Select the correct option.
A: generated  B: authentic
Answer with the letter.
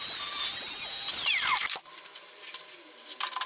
B